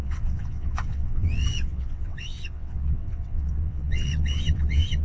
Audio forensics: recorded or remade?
remade